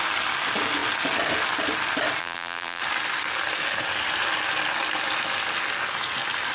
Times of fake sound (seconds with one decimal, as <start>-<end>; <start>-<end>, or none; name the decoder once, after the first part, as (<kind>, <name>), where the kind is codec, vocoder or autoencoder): 2.2-2.8 (vocoder, BigVGAN v2)